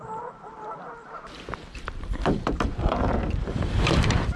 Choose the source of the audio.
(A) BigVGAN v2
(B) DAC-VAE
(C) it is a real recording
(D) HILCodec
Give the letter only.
A